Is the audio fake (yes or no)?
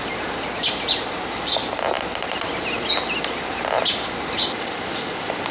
no